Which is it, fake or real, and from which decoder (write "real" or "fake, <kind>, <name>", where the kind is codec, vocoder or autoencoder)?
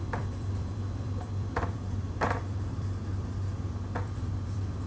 fake, vocoder, BigVGAN v2